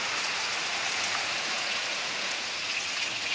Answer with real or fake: fake